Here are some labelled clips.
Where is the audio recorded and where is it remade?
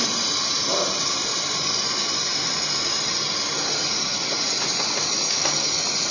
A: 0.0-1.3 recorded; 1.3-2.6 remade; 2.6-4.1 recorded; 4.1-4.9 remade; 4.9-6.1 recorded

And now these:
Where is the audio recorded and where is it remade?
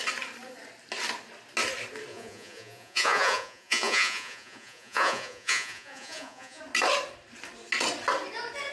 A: 0.0-2.1 recorded; 2.1-6.6 remade; 6.6-8.7 recorded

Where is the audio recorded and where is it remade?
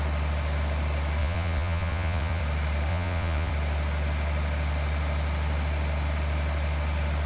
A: 0.0-1.2 recorded; 1.2-2.4 remade; 2.4-2.9 recorded; 2.9-3.5 remade; 3.5-7.3 recorded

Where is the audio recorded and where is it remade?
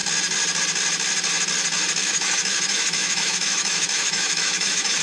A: 0.0-2.0 recorded; 2.0-5.0 remade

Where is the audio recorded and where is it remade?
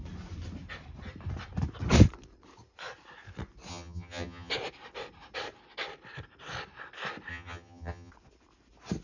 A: 0.0-3.7 recorded; 3.7-4.5 remade; 4.5-7.3 recorded; 7.3-8.1 remade; 8.1-9.0 recorded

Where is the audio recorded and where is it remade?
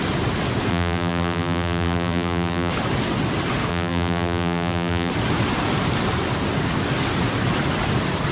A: 0.0-0.7 recorded; 0.7-2.7 remade; 2.7-3.7 recorded; 3.7-5.1 remade; 5.1-8.3 recorded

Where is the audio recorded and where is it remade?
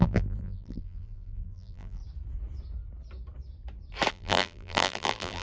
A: 0.0-2.0 remade; 2.0-4.1 recorded; 4.1-5.4 remade